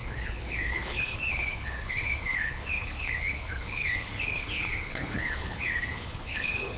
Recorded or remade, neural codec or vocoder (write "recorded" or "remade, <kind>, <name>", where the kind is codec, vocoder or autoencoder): remade, codec, HILCodec